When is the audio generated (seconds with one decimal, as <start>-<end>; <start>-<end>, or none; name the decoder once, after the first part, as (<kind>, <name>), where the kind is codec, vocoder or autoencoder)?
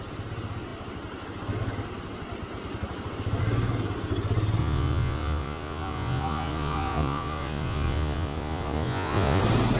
4.6-9.4 (vocoder, Vocos)